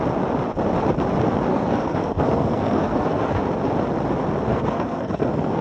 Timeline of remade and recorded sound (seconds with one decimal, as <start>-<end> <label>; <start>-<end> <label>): 0.0-1.5 recorded; 1.5-3.4 remade; 3.4-4.5 recorded; 4.5-5.6 remade